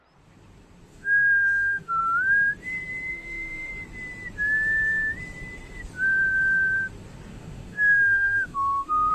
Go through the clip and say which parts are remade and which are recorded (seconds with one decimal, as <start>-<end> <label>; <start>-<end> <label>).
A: 0.0-0.9 recorded; 0.9-2.0 remade; 2.0-3.1 recorded; 3.1-3.7 remade; 3.7-7.3 recorded; 7.3-9.1 remade